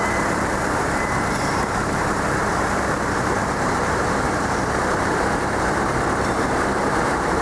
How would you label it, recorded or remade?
remade